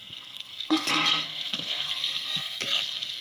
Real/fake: fake